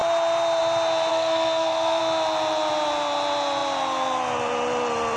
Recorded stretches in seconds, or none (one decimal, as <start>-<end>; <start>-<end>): 0.0-1.1; 2.0-5.2